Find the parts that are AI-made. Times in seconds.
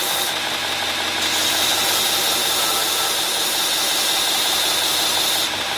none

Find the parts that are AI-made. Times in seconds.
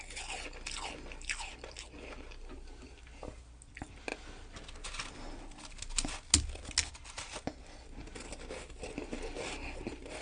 none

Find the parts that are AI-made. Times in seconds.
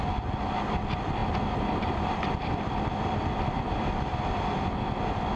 1.2-4.4